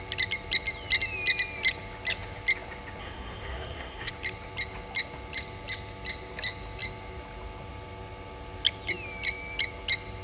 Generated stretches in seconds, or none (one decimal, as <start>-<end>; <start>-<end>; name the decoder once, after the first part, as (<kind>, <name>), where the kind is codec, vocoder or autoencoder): 3.0-4.1 (codec, SNAC)